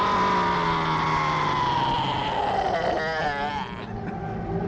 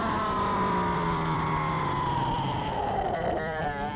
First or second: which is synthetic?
second